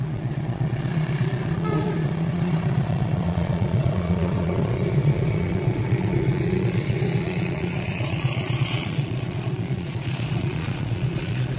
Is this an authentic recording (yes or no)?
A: no